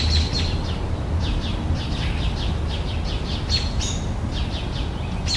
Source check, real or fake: real